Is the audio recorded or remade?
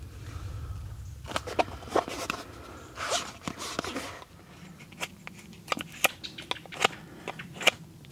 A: recorded